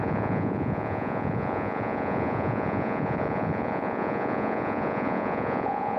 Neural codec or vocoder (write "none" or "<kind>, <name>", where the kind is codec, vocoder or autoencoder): vocoder, Vocos